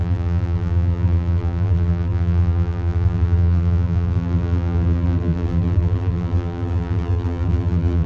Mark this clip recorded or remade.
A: remade